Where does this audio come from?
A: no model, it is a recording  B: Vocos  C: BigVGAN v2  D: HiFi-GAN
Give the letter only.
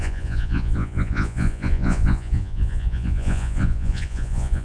B